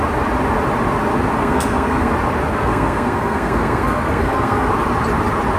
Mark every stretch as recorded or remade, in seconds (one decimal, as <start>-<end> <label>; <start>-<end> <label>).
0.0-1.4 recorded; 1.4-2.1 remade; 2.1-2.5 recorded; 2.5-4.7 remade; 4.7-5.6 recorded